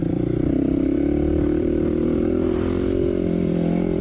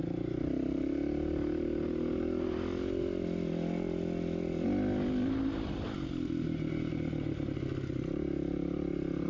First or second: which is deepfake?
first